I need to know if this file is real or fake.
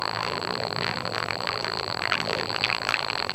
fake